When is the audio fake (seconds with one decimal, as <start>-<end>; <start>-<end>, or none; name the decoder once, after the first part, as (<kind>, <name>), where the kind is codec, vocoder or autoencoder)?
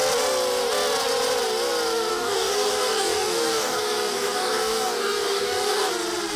2.1-5.9 (codec, DAC)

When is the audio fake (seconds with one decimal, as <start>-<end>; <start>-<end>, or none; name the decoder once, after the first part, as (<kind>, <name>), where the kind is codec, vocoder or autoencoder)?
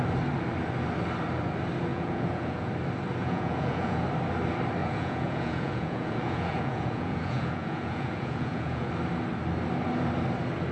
1.9-2.7 (vocoder, Vocos); 3.2-4.0; 4.8-8.9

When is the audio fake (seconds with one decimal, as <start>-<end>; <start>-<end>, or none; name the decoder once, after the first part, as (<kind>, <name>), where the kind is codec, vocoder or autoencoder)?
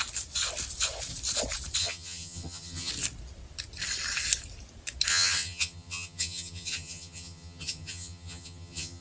1.8-2.9 (vocoder, HiFi-GAN); 5.1-9.0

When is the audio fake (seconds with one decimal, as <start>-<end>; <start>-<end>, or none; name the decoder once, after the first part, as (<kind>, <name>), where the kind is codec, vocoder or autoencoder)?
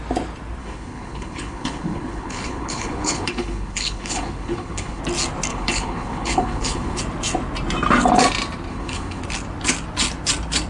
0.6-5.0 (codec, HILCodec); 5.5-7.0; 8.7-9.2